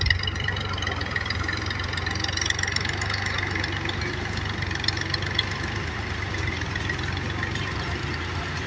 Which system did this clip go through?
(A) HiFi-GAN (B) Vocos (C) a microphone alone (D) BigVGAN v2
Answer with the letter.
C